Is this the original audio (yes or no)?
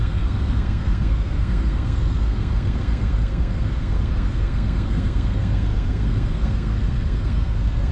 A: no